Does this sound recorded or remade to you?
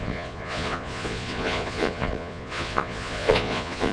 remade